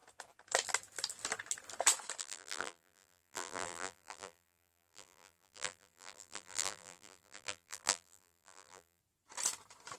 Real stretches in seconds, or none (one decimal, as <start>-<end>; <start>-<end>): 0.0-2.2; 9.0-10.0